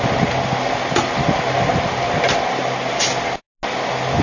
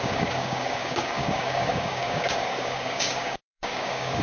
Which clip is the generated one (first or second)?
second